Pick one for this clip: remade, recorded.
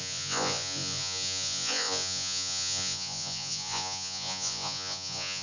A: remade